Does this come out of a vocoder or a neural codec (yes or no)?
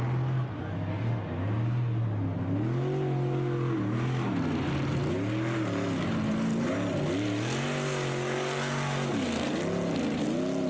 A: no